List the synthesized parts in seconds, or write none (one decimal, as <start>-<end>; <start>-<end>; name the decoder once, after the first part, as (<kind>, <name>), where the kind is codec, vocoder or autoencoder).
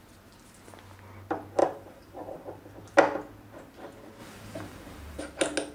1.6-2.6 (vocoder, BigVGAN v2); 4.2-5.2